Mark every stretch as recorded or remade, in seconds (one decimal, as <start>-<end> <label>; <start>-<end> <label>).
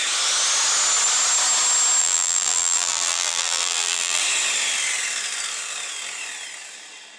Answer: 0.0-2.0 recorded; 2.0-4.2 remade; 4.2-7.2 recorded